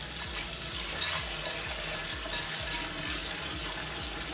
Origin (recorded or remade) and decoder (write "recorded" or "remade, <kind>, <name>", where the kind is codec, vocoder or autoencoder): recorded